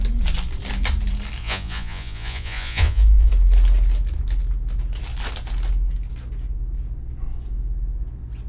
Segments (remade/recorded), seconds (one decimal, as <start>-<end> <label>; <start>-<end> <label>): 0.0-1.4 recorded; 1.4-3.3 remade; 3.3-8.5 recorded